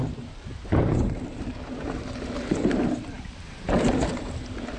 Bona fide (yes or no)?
no